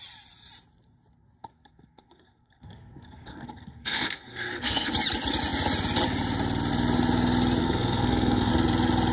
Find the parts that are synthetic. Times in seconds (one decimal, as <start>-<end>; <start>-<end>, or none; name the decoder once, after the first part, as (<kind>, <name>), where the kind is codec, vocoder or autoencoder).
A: 1.4-4.9 (codec, SNAC); 7.6-8.5